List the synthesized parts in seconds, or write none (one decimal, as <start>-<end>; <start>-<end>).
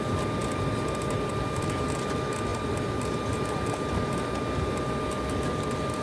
none